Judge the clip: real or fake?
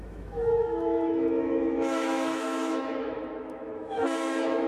fake